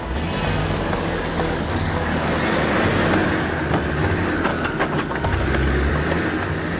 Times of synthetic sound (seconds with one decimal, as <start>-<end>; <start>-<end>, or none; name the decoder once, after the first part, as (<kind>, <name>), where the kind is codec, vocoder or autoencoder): 0.6-2.3 (codec, DAC); 4.5-5.9